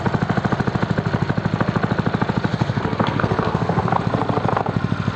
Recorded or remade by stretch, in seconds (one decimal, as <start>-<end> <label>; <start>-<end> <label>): 0.0-2.5 recorded; 2.5-4.0 remade; 4.0-5.2 recorded